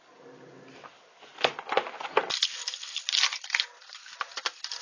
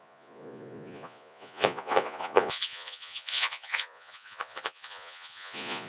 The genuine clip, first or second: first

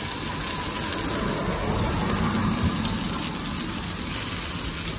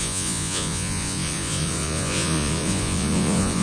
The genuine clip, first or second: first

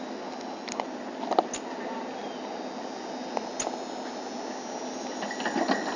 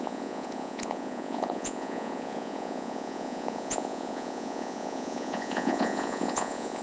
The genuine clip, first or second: first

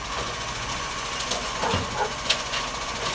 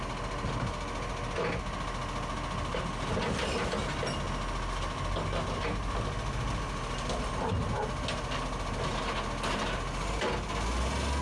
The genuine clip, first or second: second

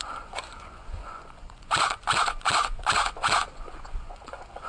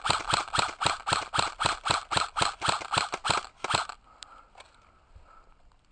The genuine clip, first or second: second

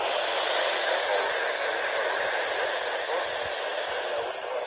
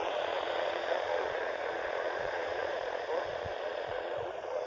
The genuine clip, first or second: first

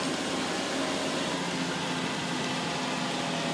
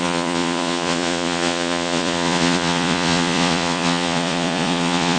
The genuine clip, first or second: first